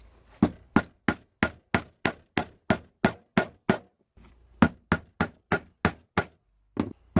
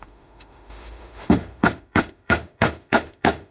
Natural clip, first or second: first